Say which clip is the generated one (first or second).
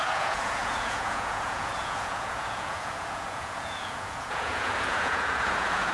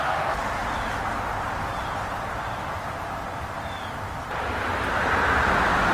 first